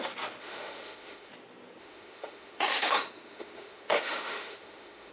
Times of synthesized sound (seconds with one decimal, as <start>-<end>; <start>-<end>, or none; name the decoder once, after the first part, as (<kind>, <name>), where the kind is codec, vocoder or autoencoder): 0.4-1.3 (autoencoder, DAC-VAE); 1.8-5.1